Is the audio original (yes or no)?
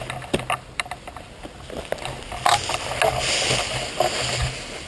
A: yes